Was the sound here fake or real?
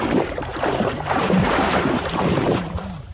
fake